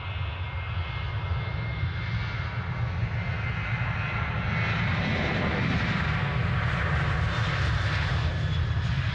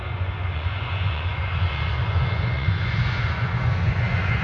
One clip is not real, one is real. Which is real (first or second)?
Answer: first